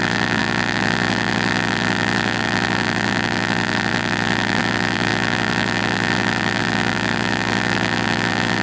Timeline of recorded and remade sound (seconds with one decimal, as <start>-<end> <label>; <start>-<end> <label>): 0.0-8.6 remade